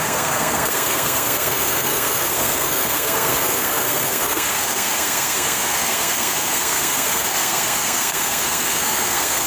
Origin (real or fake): fake